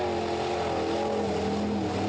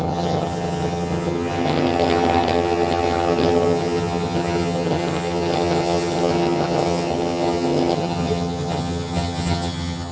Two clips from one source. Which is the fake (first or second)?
second